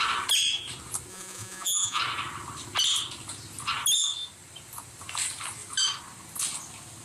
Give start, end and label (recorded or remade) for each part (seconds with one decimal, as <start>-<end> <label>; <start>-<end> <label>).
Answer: 0.0-1.1 recorded; 1.1-2.0 remade; 2.0-7.0 recorded